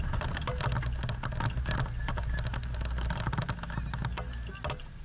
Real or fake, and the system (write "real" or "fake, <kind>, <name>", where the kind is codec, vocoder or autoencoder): real